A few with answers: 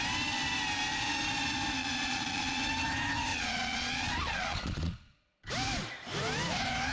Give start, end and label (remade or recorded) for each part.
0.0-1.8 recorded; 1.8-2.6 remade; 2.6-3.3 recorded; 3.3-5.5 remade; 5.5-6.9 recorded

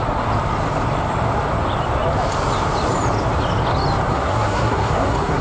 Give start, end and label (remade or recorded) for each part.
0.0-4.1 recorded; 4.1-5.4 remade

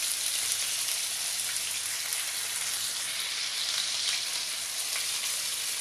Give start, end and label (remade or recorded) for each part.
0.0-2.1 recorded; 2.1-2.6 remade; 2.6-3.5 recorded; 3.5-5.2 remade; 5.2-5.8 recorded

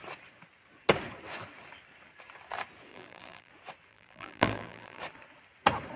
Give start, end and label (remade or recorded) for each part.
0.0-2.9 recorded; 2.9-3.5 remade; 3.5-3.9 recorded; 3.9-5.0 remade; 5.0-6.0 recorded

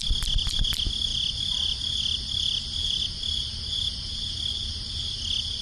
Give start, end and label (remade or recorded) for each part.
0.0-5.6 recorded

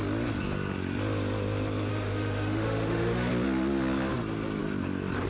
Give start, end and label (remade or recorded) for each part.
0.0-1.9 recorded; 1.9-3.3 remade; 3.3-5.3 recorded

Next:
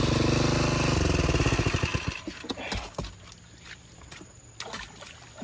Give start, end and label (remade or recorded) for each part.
0.0-5.4 recorded